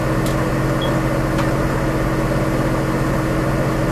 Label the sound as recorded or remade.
recorded